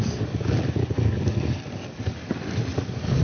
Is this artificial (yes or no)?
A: no